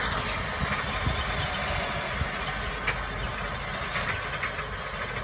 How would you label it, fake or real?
real